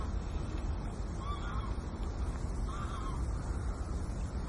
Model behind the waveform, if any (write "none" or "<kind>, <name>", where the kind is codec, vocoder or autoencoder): none